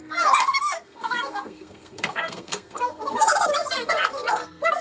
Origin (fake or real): fake